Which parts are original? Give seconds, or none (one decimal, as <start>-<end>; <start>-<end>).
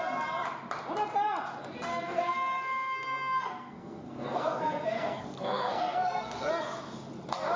0.0-1.9; 6.5-7.6